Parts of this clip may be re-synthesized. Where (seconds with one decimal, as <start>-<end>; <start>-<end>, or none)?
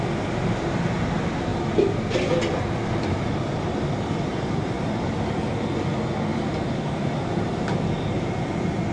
4.3-4.8; 6.3-8.4